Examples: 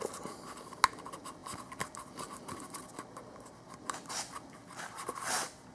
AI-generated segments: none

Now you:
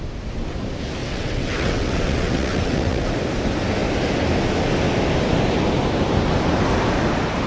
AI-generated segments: 1.0-3.1 (vocoder, WaveNeXt)

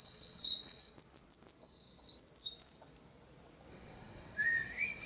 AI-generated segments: 0.0-0.9 (vocoder, WaveNeXt); 3.7-5.1

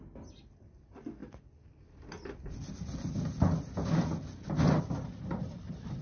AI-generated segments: none

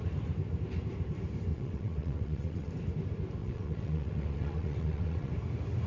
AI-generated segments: 1.5-2.7 (vocoder, WaveNeXt); 3.4-5.3

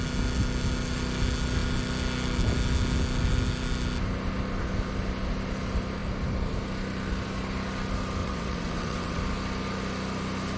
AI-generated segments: 8.2-9.2 (vocoder, WaveNeXt)